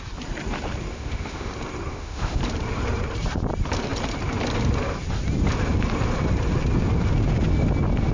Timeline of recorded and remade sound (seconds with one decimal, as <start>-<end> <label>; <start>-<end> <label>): 0.0-0.9 recorded; 0.9-1.5 remade; 1.5-1.9 recorded; 1.9-2.4 remade; 2.4-8.1 recorded